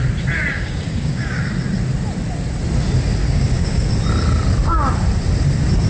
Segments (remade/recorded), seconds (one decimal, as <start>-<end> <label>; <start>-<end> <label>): 0.0-0.5 recorded; 0.5-1.4 remade; 1.4-3.2 recorded; 3.2-3.9 remade; 3.9-5.9 recorded